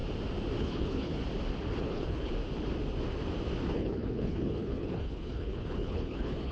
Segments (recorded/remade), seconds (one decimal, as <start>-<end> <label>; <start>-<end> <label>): 0.0-0.6 recorded; 0.6-1.2 remade; 1.2-1.8 recorded; 1.8-2.3 remade; 2.3-3.7 recorded; 3.7-6.5 remade